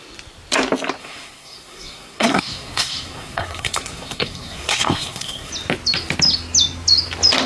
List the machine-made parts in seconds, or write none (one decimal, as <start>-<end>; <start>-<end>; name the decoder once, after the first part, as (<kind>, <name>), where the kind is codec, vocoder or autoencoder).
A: 1.0-5.5 (codec, SNAC)